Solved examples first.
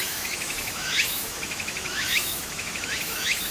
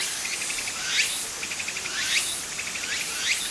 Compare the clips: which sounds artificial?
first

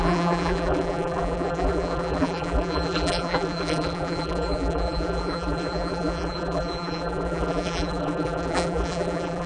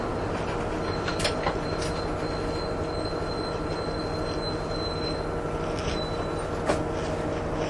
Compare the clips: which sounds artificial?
first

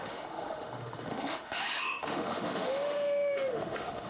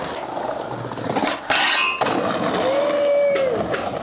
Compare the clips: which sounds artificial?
first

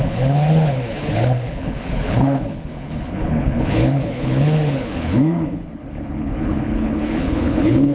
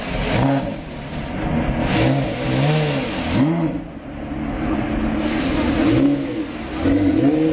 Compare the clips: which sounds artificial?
first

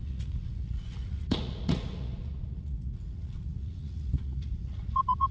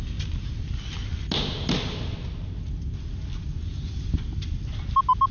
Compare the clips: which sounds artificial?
first